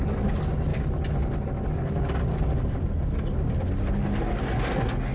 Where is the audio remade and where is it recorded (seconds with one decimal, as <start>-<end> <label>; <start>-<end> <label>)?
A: 0.0-5.1 recorded